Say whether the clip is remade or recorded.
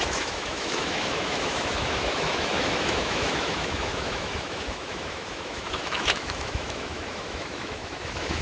remade